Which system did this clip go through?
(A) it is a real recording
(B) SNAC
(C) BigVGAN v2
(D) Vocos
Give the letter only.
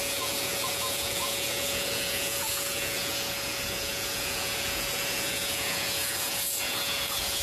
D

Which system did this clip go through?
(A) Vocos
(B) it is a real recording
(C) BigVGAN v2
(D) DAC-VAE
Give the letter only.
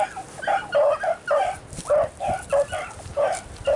B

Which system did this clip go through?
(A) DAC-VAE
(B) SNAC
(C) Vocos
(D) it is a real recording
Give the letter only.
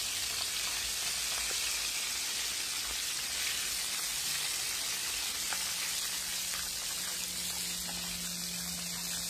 D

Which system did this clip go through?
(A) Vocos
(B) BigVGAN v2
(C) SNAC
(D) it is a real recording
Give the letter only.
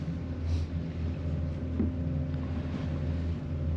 D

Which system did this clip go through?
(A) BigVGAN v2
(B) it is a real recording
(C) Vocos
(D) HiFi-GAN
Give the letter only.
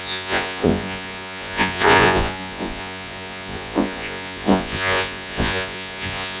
C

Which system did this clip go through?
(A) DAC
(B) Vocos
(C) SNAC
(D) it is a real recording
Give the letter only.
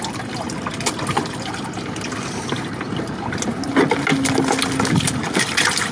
D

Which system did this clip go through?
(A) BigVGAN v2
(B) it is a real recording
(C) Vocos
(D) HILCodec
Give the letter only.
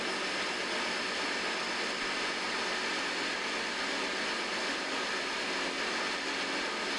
B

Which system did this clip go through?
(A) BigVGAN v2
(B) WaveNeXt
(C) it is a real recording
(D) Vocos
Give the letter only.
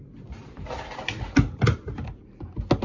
C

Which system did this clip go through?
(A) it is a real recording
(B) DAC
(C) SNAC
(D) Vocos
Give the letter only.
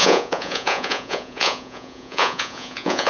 D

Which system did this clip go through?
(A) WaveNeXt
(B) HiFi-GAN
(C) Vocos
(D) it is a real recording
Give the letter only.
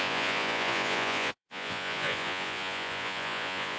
C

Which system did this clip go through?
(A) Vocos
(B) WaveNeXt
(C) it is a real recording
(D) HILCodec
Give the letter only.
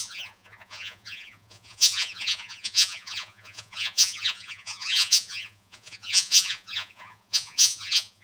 A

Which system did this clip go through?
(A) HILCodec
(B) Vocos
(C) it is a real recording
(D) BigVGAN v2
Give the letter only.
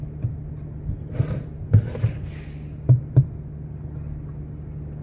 C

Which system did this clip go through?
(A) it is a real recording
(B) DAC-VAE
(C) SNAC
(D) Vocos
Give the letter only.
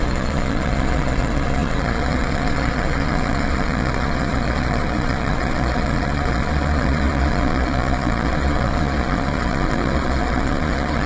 D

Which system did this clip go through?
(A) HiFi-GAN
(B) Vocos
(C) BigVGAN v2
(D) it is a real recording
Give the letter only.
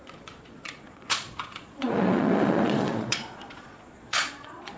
B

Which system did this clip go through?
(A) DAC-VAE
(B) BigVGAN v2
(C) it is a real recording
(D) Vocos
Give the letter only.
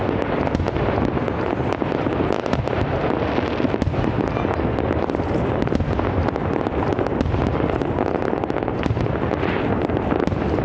C